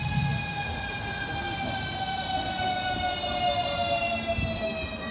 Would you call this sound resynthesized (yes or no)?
no